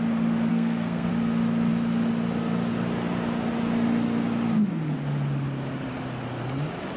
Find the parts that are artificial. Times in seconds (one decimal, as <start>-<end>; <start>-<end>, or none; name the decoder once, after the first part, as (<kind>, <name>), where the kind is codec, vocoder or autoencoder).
0.5-1.1 (codec, SNAC)